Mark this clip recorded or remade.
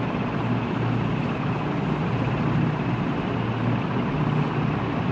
recorded